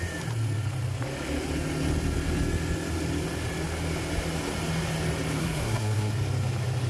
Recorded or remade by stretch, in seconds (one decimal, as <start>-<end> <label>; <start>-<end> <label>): 0.0-5.4 recorded; 5.4-6.1 remade; 6.1-6.9 recorded